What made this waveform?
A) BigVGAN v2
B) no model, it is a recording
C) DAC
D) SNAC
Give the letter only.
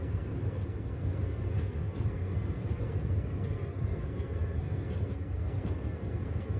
D